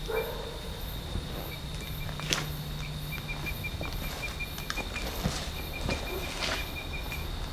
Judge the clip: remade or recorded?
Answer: recorded